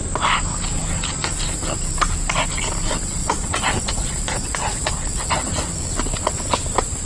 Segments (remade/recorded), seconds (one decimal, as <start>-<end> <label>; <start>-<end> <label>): 0.0-3.2 recorded; 3.2-5.5 remade; 5.5-7.1 recorded